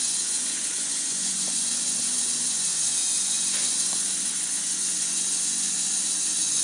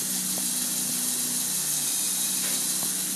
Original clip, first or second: second